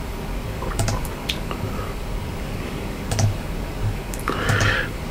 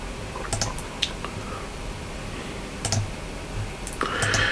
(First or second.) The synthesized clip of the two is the first